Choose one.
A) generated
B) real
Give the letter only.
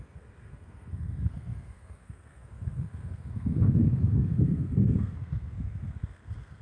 A